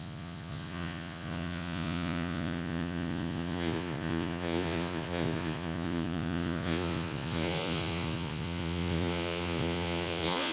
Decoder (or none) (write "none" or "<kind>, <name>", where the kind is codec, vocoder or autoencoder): vocoder, Vocos